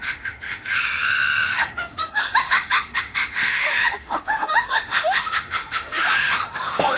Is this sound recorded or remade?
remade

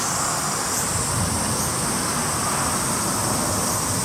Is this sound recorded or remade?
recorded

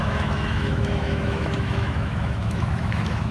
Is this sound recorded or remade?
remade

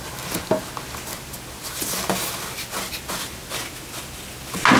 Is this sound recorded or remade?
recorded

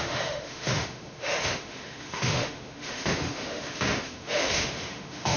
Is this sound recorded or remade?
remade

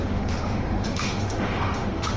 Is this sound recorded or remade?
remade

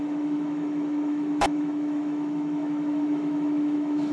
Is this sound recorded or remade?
remade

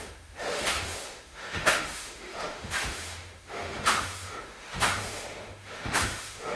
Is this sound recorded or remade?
remade